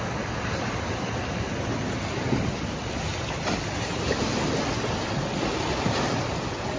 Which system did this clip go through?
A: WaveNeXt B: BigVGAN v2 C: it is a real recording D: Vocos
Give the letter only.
C